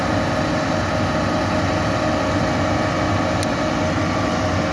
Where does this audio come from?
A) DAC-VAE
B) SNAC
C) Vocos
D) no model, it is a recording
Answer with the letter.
D